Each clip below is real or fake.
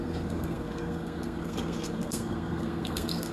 fake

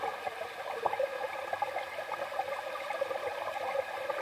real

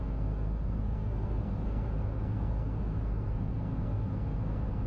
fake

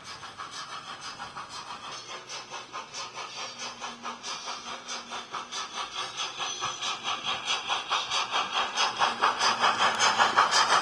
real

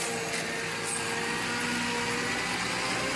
real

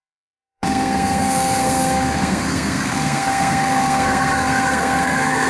fake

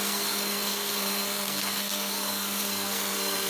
fake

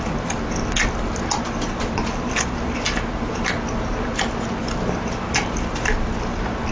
real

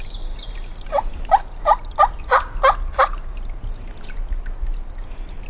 real